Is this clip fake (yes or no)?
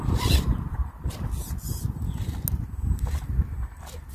no